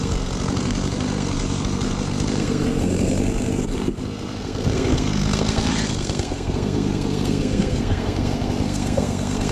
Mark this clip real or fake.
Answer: fake